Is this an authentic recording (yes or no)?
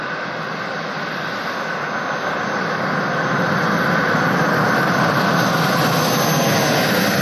yes